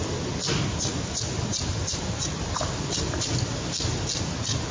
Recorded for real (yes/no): yes